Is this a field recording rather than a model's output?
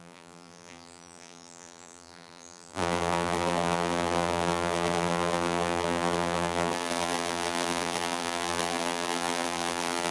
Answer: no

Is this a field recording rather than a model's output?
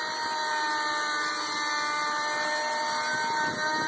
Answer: yes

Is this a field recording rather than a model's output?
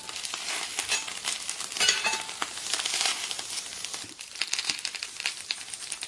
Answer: no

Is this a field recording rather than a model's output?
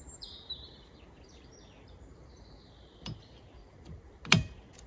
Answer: no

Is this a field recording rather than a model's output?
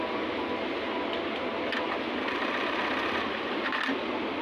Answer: yes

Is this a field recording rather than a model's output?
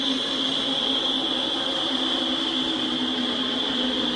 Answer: no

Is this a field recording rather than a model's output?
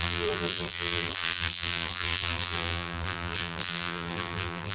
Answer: no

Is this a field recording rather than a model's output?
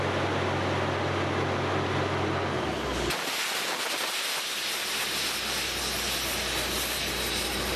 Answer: yes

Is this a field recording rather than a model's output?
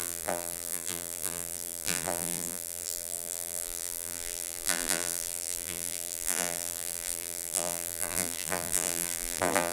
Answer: no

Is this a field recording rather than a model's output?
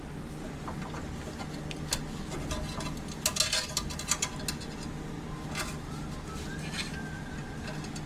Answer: yes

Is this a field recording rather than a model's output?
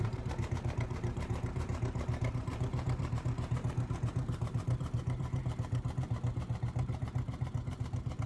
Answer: no